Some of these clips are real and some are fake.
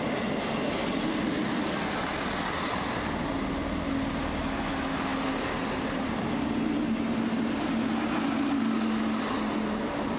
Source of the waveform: real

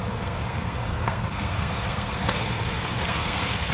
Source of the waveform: fake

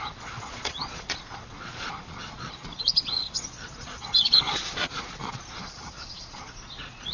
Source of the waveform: fake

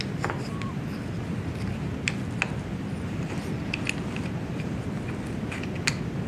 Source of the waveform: real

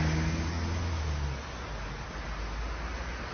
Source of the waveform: real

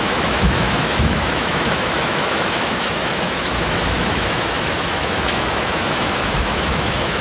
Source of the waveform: fake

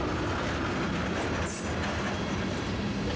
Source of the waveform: real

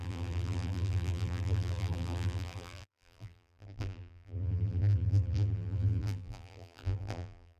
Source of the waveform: fake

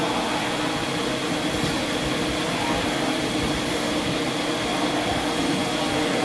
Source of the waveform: real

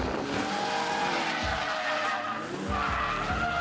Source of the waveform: real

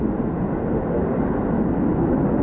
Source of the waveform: real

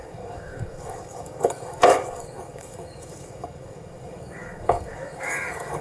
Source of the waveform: fake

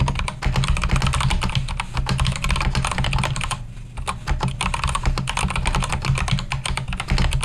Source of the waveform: real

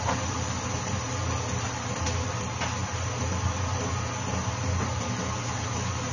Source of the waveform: real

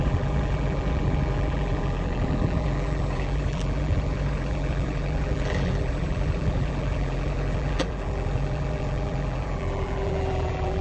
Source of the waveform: fake